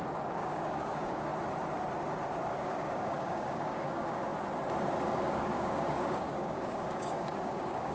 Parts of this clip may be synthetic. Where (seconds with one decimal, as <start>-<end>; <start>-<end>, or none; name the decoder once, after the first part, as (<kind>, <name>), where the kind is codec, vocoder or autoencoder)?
0.0-1.3 (codec, DAC); 2.5-4.3; 5.1-7.9